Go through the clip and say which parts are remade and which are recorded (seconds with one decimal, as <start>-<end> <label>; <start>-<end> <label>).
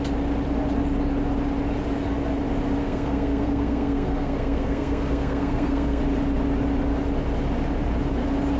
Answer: 0.0-2.8 recorded; 2.8-6.0 remade; 6.0-8.6 recorded